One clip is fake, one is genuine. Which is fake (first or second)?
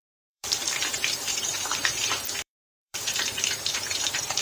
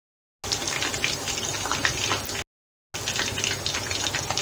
first